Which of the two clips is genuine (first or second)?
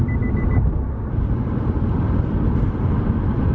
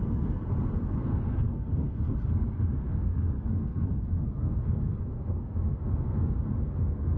first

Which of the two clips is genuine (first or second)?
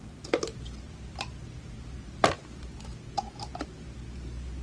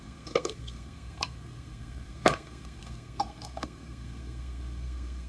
first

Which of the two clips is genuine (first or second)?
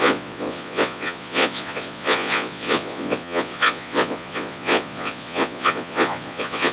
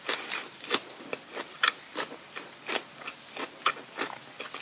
second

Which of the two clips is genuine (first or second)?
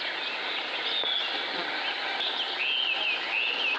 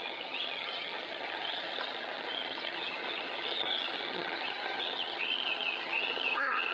first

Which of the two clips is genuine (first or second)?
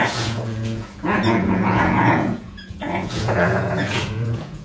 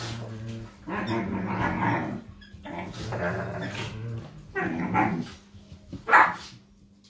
second